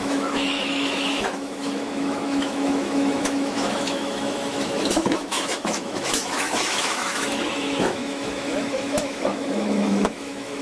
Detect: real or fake fake